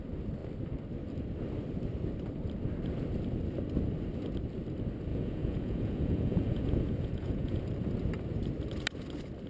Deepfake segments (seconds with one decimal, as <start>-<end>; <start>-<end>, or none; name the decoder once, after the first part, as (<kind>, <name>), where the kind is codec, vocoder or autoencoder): 5.1-7.6 (vocoder, Vocos)